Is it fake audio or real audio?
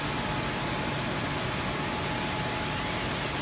real